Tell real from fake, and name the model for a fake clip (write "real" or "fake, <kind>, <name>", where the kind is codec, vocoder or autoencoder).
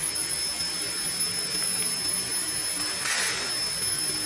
real